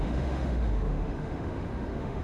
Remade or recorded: remade